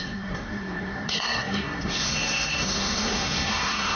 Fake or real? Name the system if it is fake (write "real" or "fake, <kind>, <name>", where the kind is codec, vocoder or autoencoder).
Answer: fake, codec, SNAC